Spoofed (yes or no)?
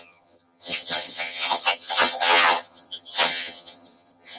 yes